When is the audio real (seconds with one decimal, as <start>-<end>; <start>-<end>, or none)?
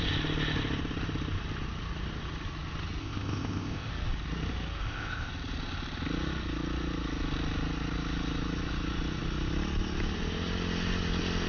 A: 0.0-3.0; 3.9-4.8; 5.3-11.5